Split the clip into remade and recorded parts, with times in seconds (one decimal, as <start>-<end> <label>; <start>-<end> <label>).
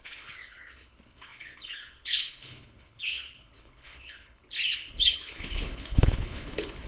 0.0-6.9 remade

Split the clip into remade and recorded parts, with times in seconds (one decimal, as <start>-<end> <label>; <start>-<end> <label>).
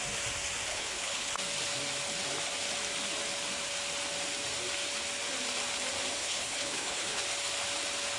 0.0-0.7 recorded; 0.7-1.3 remade; 1.3-6.2 recorded; 6.2-7.2 remade; 7.2-8.2 recorded